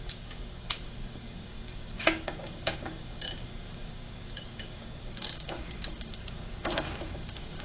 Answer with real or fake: fake